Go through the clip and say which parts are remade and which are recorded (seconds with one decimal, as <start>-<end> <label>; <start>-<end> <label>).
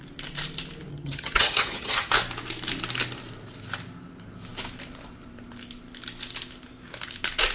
0.0-0.9 recorded; 0.9-2.1 remade; 2.1-7.5 recorded